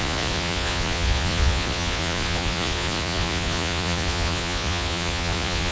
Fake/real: fake